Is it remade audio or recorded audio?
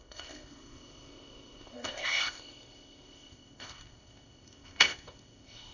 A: remade